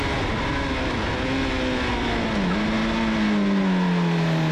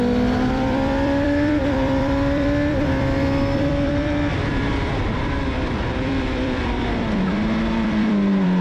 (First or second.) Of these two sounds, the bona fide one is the first